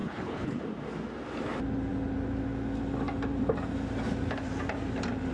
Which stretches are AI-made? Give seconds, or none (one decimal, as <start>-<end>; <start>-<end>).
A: 0.0-0.6